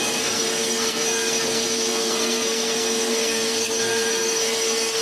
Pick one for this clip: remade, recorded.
remade